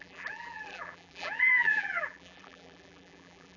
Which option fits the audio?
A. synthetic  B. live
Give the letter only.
A